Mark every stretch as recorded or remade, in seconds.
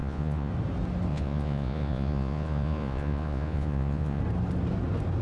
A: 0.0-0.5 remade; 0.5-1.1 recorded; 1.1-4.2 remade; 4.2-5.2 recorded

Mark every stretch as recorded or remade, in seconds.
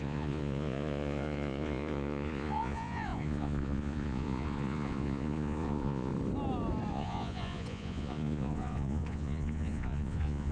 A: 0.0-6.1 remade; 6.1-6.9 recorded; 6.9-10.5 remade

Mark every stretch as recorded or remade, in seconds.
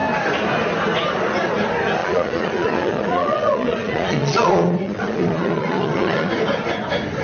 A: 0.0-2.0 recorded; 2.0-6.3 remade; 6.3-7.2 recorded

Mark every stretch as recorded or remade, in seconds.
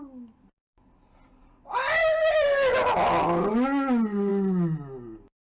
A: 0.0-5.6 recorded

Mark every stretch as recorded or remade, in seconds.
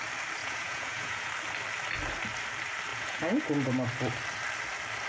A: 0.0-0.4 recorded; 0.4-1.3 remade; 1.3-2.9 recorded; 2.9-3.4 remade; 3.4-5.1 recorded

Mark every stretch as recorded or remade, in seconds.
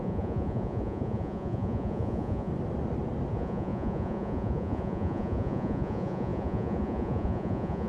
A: 0.0-2.5 remade; 2.5-3.3 recorded; 3.3-7.9 remade